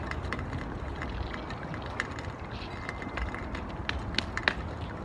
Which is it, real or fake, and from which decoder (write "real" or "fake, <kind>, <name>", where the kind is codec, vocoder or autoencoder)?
real